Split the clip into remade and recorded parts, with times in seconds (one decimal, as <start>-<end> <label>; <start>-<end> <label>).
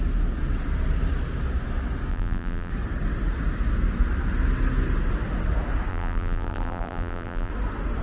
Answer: 0.0-2.1 recorded; 2.1-2.7 remade; 2.7-5.9 recorded; 5.9-7.5 remade; 7.5-8.0 recorded